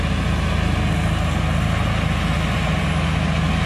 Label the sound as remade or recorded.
recorded